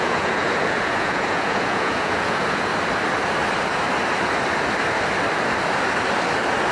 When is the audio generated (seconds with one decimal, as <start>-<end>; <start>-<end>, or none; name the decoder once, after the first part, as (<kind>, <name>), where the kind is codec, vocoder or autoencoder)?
0.0-2.7 (vocoder, Vocos)